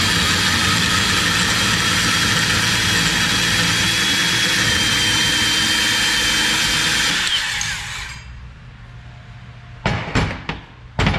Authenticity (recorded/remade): recorded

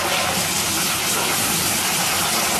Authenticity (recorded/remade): recorded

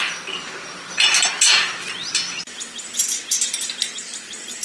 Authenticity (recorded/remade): recorded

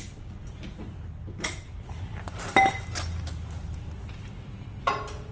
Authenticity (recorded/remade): recorded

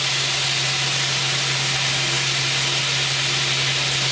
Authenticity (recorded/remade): recorded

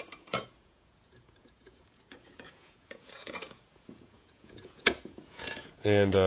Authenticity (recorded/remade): remade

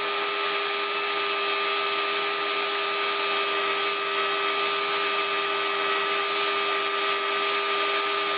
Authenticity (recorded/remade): recorded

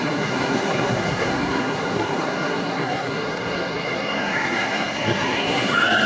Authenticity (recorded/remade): remade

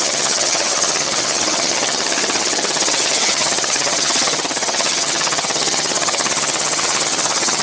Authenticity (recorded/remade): remade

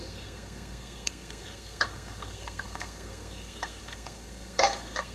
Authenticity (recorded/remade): remade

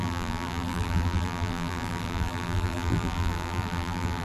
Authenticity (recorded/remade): remade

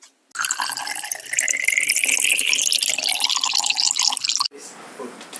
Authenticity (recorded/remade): recorded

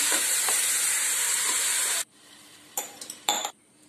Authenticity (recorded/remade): remade